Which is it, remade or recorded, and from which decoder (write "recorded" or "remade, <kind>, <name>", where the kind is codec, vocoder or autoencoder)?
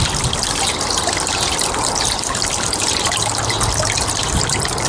recorded